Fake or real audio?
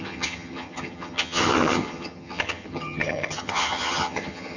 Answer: fake